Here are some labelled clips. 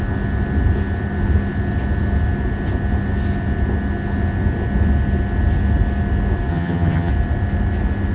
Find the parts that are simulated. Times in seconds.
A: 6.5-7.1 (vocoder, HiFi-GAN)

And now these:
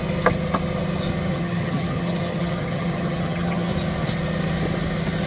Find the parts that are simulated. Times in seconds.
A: 1.3-3.7 (vocoder, HiFi-GAN)

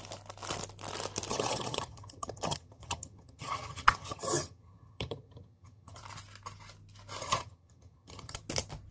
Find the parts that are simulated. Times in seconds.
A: 1.3-6.0 (vocoder, HiFi-GAN); 7.2-8.4

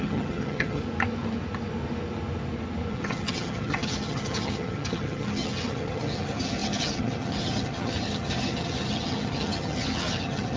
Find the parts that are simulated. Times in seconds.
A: 0.0-0.8 (vocoder, HiFi-GAN); 2.9-10.6

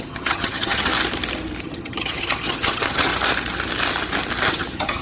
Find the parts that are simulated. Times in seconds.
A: 0.0-0.9 (vocoder, HiFi-GAN); 1.6-3.1; 4.5-5.0

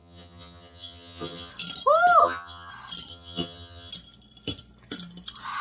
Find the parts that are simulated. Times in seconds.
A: 0.0-1.5 (vocoder, HiFi-GAN); 2.2-2.7; 3.1-3.9

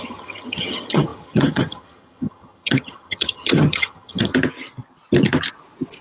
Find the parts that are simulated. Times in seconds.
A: 0.0-4.3 (vocoder, HiFi-GAN)

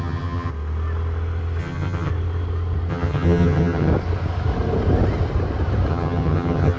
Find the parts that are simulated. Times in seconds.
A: 0.0-0.5 (vocoder, HiFi-GAN); 1.6-2.1; 2.9-3.9; 5.9-6.8